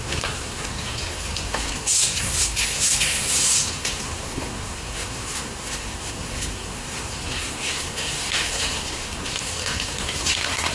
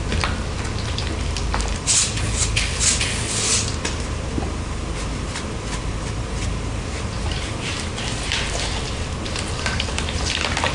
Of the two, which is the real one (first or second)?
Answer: second